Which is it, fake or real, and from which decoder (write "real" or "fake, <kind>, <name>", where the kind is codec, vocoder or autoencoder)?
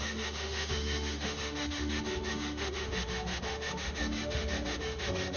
fake, autoencoder, DAC-VAE